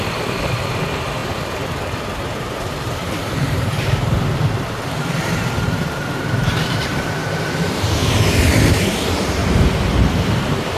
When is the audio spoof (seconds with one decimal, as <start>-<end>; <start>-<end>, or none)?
0.0-7.2; 7.8-9.4; 10.3-10.8